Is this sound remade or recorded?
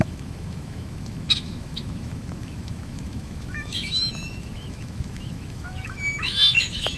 remade